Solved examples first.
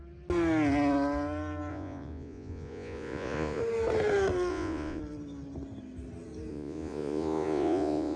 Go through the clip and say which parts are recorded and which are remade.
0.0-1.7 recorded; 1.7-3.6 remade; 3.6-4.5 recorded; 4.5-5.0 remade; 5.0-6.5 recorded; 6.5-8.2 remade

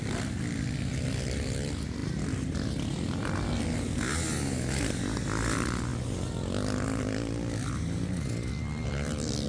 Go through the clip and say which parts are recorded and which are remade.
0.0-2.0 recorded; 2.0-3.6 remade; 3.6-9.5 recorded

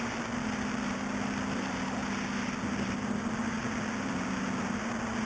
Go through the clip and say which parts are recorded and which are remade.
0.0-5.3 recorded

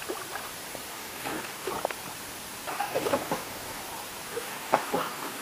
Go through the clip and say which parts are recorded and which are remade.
0.0-0.9 recorded; 0.9-1.7 remade; 1.7-2.7 recorded; 2.7-3.8 remade; 3.8-4.3 recorded; 4.3-5.4 remade